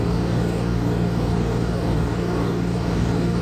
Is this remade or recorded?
remade